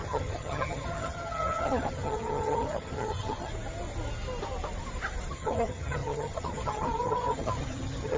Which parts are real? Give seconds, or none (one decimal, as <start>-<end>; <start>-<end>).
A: 3.5-5.3